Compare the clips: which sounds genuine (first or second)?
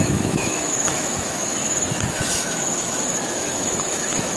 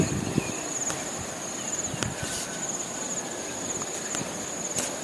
second